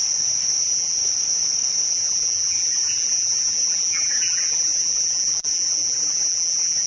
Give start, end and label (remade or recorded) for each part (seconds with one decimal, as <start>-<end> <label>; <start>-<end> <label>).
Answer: 0.0-0.6 recorded; 0.6-1.0 remade; 1.0-1.9 recorded; 1.9-6.9 remade